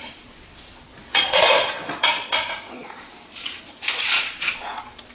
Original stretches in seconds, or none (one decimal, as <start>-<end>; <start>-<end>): none